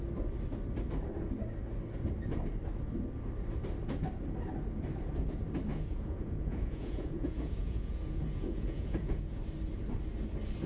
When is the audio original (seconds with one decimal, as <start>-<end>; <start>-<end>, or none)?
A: 0.0-5.7; 9.4-10.7